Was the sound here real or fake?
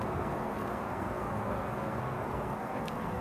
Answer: fake